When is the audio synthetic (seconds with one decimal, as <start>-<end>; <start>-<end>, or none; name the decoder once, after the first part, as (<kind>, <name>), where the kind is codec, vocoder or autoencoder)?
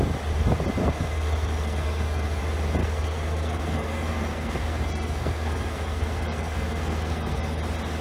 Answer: 0.8-2.4 (codec, SNAC); 2.8-7.6